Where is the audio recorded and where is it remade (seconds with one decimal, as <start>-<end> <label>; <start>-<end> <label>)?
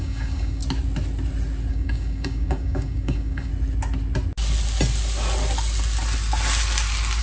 0.0-0.6 remade; 0.6-1.7 recorded; 1.7-3.5 remade; 3.5-7.2 recorded